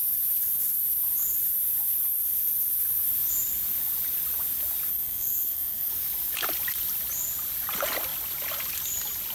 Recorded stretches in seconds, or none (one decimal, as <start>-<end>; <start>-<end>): 0.0-4.9; 5.9-9.3